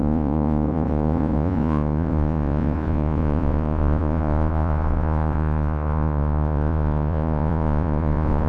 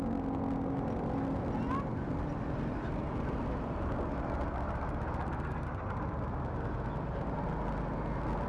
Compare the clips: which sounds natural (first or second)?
second